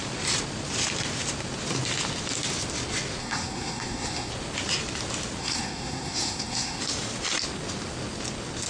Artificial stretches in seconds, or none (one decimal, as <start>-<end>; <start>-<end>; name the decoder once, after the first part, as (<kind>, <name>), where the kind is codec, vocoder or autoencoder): 3.2-4.3 (codec, SNAC); 5.4-6.8